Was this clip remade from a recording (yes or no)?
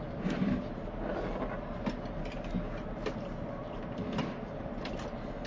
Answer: no